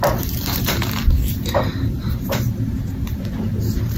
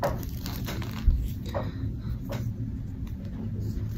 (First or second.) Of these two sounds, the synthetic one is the first